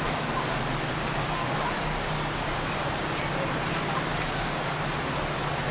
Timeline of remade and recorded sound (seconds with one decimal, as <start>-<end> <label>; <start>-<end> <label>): 0.0-1.2 recorded; 1.2-2.7 remade; 2.7-4.1 recorded; 4.1-4.7 remade; 4.7-5.7 recorded